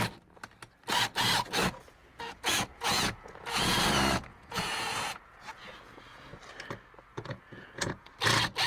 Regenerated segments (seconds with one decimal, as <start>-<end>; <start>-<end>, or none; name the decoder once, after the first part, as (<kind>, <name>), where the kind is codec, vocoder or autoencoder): 2.0-3.8 (vocoder, Vocos); 4.3-6.3; 7.1-8.1